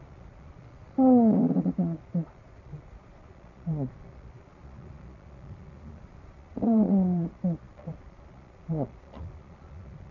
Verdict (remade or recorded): remade